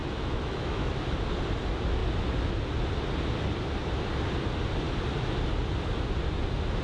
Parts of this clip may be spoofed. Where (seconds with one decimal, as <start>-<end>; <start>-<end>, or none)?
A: 0.0-0.9